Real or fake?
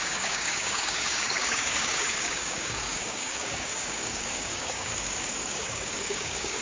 fake